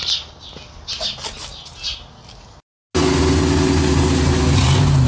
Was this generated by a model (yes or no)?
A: no